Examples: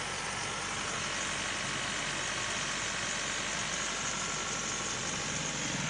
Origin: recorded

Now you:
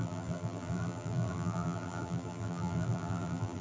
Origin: remade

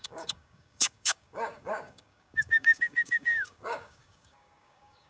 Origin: remade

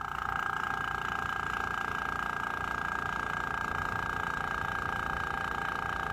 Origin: recorded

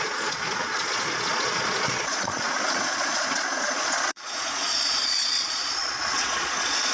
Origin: remade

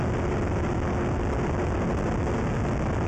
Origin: recorded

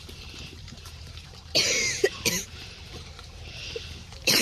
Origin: remade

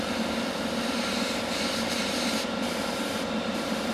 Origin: remade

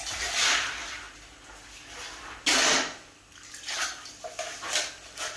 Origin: recorded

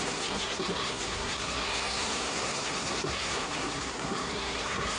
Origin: remade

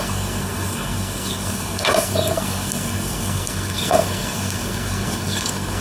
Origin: remade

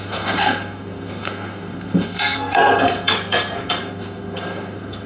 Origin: remade